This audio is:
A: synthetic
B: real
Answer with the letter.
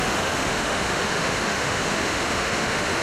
A